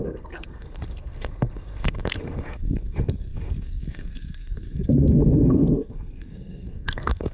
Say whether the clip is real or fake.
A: fake